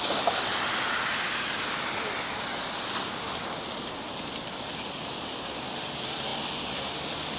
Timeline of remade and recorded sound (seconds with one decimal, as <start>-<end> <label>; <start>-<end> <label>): 0.0-7.4 recorded